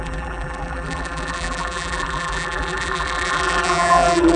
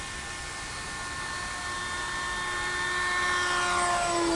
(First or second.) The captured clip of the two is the second